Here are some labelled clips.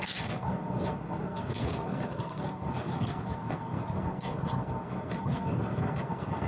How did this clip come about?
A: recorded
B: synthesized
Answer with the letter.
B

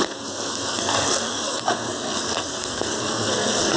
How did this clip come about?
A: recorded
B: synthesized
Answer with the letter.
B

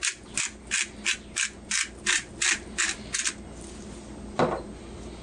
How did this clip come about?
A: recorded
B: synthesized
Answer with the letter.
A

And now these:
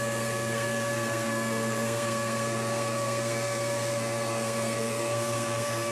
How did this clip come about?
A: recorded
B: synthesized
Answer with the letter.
B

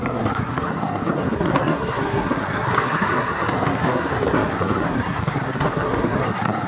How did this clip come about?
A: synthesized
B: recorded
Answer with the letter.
A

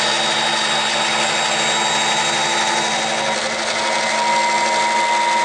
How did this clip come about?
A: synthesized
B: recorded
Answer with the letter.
B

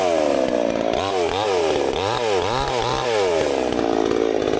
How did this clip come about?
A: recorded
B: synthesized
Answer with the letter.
A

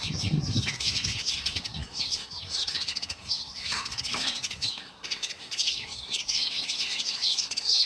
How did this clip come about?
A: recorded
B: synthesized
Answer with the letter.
B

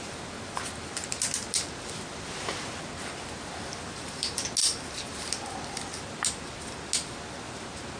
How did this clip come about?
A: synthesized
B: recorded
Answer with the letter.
B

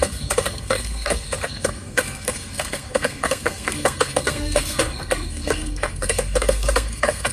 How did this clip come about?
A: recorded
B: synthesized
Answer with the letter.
B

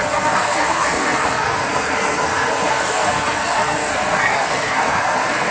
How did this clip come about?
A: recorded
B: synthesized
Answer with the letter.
B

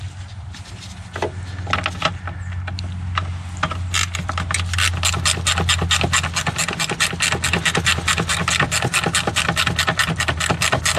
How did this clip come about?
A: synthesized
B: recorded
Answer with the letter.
B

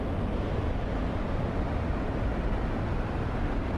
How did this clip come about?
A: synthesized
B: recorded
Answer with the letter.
B